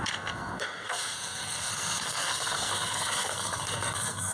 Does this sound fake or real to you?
fake